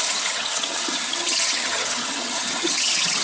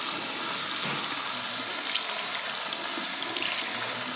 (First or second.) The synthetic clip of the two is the first